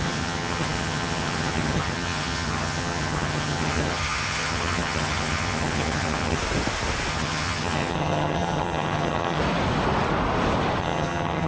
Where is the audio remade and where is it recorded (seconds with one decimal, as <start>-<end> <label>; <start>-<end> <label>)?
0.0-6.4 remade; 6.4-7.1 recorded; 7.1-9.4 remade; 9.4-10.8 recorded; 10.8-11.5 remade